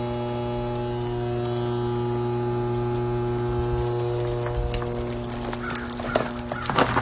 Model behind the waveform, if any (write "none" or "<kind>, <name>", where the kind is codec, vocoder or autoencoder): none